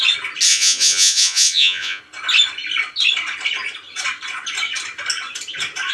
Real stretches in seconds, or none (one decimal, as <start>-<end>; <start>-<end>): 0.0-0.5; 2.0-5.9